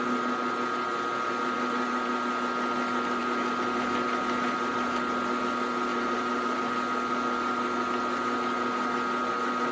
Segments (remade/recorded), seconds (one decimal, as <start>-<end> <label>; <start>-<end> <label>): 0.0-5.9 recorded; 5.9-6.7 remade; 6.7-9.7 recorded